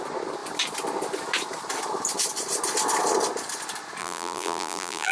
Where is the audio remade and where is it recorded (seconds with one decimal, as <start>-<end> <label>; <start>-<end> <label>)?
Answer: 0.0-4.0 recorded; 4.0-5.1 remade